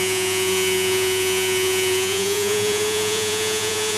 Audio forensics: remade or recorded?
remade